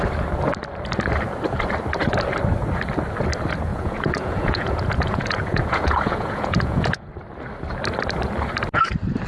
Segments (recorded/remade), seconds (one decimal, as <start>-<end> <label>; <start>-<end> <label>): 0.0-3.7 recorded; 3.7-7.1 remade; 7.1-9.3 recorded